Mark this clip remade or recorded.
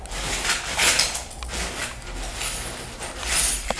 recorded